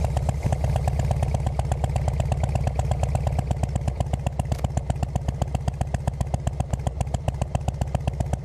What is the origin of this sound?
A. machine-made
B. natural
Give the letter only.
B